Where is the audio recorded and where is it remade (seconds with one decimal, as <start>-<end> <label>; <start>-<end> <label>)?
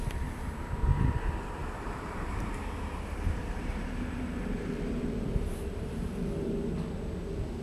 0.0-1.6 recorded; 1.6-6.2 remade; 6.2-7.6 recorded